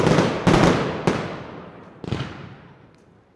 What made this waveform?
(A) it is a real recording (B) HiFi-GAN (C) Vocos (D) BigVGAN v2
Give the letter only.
A